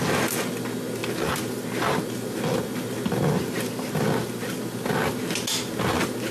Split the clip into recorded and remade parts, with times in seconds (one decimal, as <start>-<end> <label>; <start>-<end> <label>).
0.0-6.3 recorded